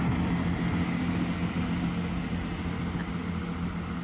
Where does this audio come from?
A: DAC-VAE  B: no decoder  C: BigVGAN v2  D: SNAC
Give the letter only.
B